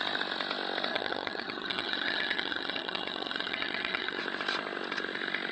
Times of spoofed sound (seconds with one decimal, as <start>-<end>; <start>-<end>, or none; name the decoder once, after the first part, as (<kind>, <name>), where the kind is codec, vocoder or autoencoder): 0.9-4.2 (vocoder, HiFi-GAN)